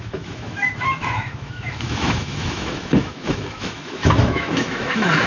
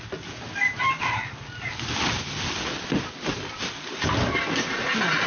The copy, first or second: first